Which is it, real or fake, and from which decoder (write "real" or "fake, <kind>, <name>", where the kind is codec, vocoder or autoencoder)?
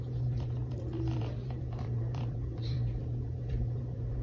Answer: fake, vocoder, BigVGAN v2